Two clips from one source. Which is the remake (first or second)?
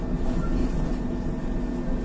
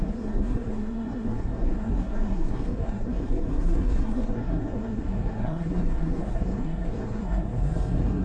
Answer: second